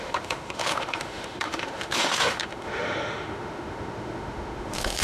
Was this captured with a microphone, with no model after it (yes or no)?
no